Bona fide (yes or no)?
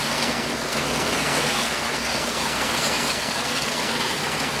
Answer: no